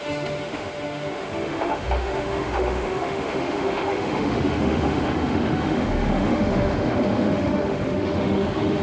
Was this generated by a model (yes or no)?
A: yes